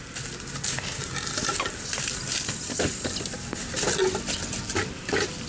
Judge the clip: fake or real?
real